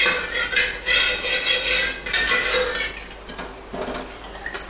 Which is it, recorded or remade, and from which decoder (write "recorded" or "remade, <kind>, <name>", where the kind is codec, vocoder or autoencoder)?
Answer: recorded